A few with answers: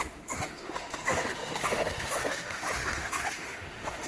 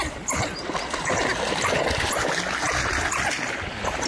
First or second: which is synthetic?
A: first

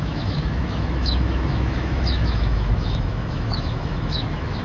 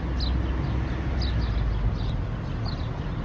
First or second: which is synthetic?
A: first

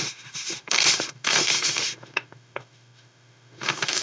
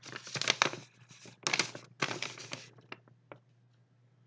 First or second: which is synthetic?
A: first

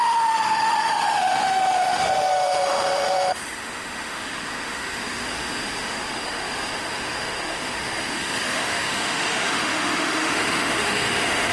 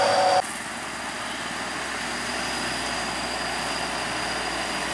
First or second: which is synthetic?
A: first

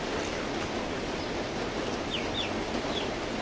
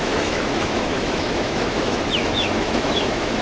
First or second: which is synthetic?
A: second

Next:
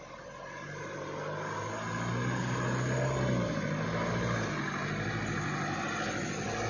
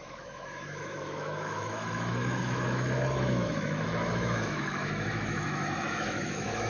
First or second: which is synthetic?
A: second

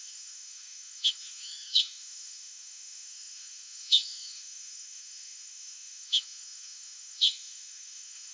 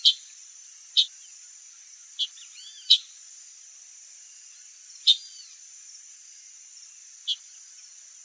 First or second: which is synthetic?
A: first